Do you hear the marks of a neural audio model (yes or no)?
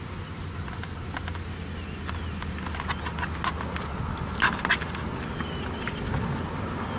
no